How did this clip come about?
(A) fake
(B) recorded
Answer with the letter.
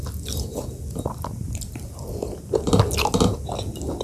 B